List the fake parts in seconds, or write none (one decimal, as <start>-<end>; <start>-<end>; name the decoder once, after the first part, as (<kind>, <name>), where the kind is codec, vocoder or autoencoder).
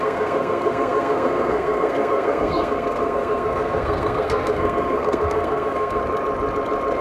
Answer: 0.0-6.0 (codec, SNAC)